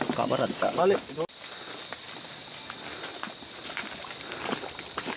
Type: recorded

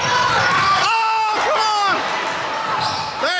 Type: recorded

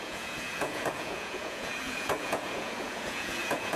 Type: remade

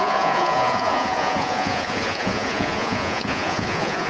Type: remade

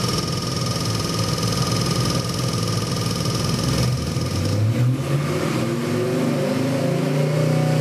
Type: recorded